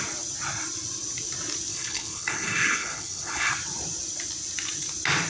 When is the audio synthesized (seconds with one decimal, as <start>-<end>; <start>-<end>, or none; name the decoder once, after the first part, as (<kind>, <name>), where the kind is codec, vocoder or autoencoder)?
1.7-3.5 (codec, HILCodec)